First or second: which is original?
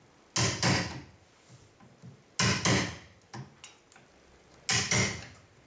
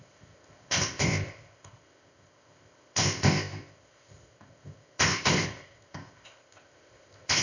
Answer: first